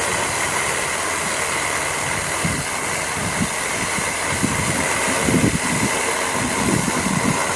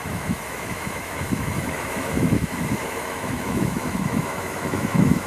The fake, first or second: second